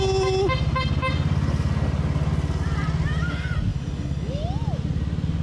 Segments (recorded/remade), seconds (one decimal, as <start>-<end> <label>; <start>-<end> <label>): 0.0-3.7 recorded; 3.7-4.4 remade; 4.4-5.4 recorded